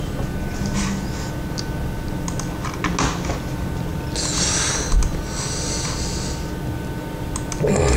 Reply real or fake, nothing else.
real